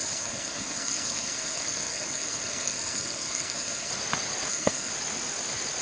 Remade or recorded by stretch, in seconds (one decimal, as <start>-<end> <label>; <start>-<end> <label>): 0.0-3.9 remade; 3.9-4.5 recorded; 4.5-4.9 remade; 4.9-5.8 recorded